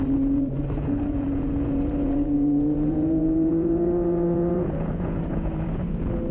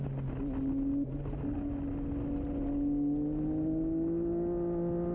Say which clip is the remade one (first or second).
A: first